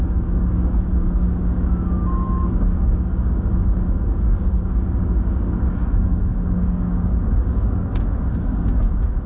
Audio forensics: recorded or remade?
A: remade